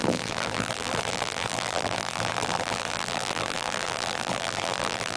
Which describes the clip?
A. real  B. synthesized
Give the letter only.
B